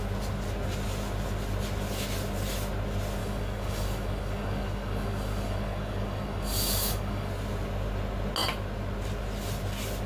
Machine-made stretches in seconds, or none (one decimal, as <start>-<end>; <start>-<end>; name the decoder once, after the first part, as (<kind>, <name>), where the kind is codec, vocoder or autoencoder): 3.2-7.3 (codec, DAC)